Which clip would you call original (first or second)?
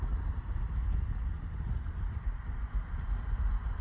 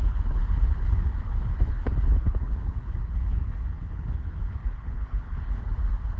first